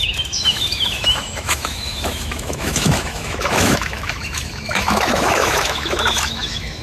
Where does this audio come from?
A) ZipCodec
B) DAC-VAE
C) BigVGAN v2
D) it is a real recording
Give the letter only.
B